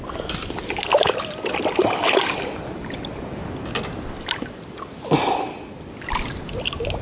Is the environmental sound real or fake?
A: real